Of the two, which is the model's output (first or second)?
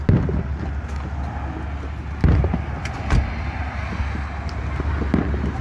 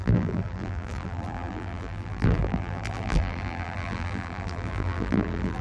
second